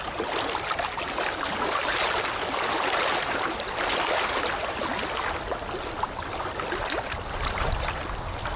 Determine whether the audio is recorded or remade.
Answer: recorded